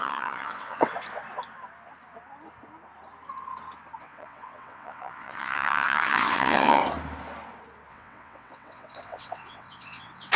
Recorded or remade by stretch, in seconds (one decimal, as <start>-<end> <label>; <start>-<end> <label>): 0.0-0.9 remade; 0.9-4.0 recorded; 4.0-6.8 remade; 6.8-7.9 recorded; 7.9-10.4 remade